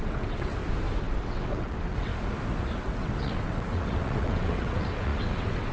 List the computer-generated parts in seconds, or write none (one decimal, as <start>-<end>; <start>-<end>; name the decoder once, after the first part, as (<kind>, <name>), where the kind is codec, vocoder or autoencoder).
0.0-0.6 (vocoder, WaveNeXt); 1.2-2.1; 2.8-5.7